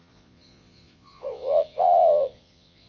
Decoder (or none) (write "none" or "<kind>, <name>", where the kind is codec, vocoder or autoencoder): vocoder, Vocos